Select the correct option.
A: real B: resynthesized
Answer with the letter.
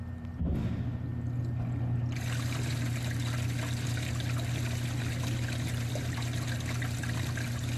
B